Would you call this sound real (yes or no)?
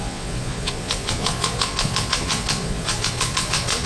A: no